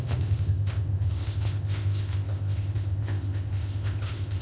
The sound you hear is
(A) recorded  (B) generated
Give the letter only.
B